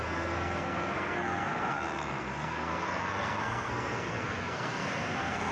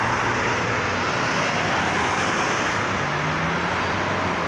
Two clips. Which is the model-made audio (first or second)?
first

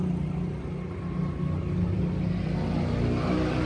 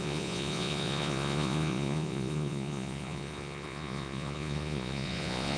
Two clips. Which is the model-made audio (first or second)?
second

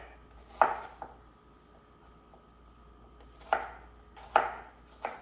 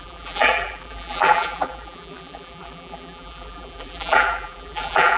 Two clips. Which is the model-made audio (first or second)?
second